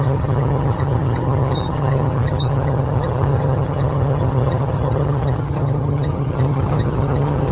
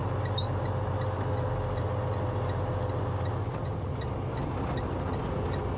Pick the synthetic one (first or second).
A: first